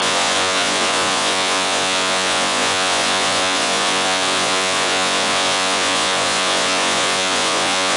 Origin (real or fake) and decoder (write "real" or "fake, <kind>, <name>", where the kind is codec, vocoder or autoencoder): fake, vocoder, Vocos